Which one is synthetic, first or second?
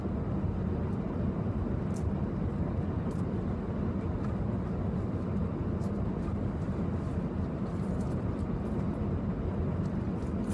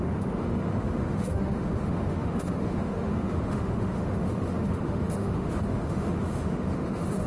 second